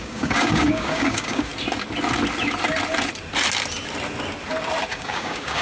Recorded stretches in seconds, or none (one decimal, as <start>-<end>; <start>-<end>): 1.5-4.9